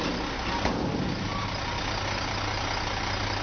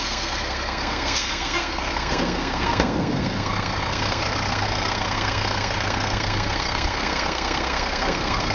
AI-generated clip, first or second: second